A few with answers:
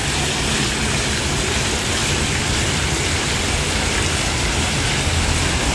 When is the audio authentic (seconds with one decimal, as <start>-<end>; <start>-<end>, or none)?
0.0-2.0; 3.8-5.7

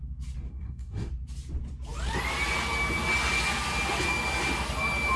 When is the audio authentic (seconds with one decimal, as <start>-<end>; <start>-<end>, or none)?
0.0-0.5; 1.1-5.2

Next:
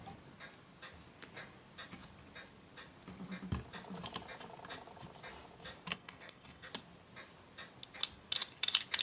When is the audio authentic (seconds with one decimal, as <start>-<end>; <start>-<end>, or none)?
0.0-5.9; 6.7-9.0